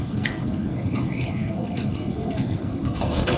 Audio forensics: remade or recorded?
remade